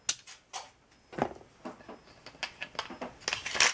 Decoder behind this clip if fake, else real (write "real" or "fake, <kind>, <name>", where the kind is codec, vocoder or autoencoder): real